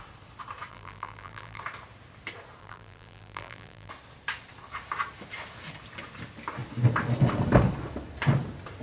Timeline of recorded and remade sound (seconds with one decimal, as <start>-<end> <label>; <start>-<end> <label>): 0.0-0.7 recorded; 0.7-1.6 remade; 1.6-2.6 recorded; 2.6-3.9 remade; 3.9-8.8 recorded